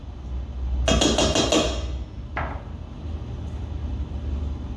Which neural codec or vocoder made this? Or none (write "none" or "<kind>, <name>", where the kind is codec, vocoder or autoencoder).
none